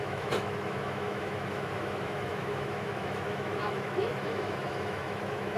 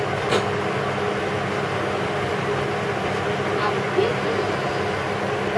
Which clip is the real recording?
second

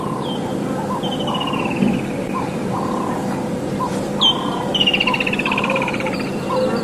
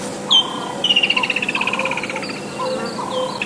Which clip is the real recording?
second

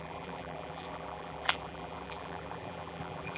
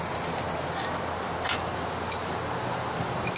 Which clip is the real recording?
second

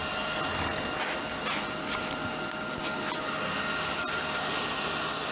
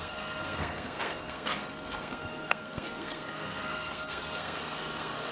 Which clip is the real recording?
first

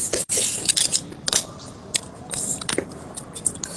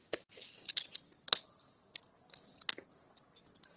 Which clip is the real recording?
second